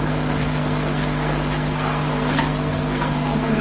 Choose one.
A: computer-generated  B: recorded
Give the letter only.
A